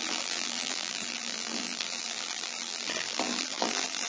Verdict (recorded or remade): remade